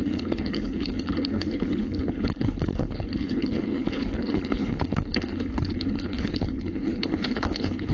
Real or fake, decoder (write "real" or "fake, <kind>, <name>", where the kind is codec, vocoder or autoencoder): fake, codec, HILCodec